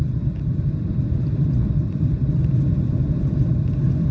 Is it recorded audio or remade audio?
recorded